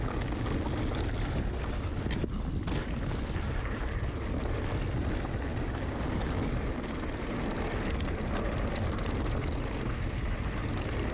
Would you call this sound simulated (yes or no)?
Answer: no